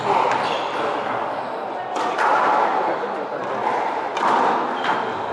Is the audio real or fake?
real